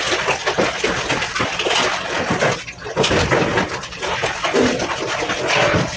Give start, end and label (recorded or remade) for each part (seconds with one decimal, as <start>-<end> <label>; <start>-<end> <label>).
0.0-6.0 recorded